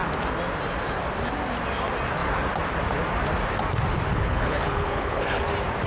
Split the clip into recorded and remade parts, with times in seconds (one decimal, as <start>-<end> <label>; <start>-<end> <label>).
0.0-4.1 recorded; 4.1-5.4 remade; 5.4-5.9 recorded